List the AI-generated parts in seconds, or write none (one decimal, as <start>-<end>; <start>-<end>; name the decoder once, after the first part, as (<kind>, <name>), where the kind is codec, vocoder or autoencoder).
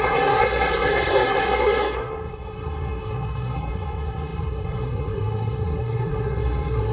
0.0-6.9 (codec, SNAC)